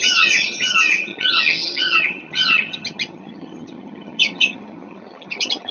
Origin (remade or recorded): remade